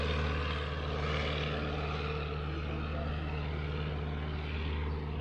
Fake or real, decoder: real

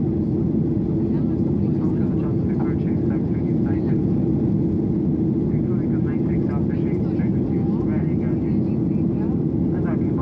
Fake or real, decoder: real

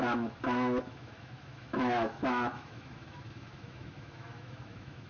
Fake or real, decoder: fake, autoencoder, DAC-VAE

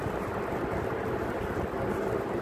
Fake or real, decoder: real